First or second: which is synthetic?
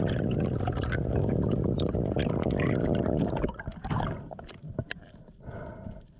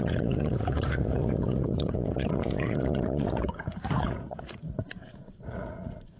second